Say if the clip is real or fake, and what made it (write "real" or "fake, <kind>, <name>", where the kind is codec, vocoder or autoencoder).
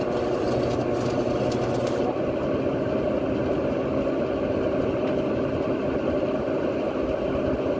real